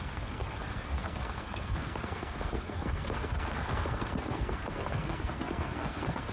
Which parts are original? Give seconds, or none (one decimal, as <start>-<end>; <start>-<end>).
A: none